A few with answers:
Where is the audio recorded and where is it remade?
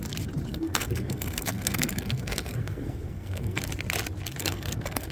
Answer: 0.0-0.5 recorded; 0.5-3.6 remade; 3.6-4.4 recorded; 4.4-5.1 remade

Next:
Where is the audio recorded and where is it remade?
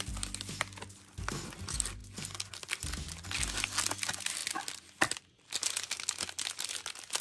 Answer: 0.0-7.2 recorded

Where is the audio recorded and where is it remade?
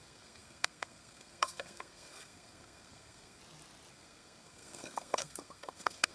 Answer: 0.0-3.4 remade; 3.4-3.9 recorded; 3.9-6.1 remade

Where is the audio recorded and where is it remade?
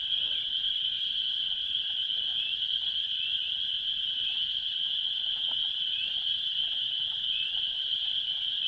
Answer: 0.0-2.3 remade; 2.3-3.7 recorded; 3.7-8.7 remade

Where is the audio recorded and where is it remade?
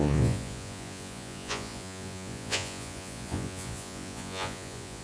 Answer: 0.0-5.0 remade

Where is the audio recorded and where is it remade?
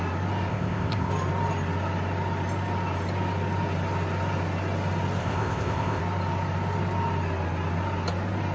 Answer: 0.0-0.5 recorded; 0.5-1.1 remade; 1.1-5.2 recorded; 5.2-6.0 remade; 6.0-8.5 recorded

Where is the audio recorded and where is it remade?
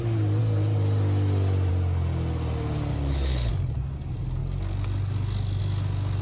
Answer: 0.0-2.9 recorded; 2.9-3.5 remade; 3.5-6.2 recorded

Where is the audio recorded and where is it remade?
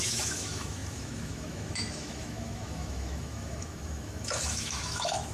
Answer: 0.0-5.3 remade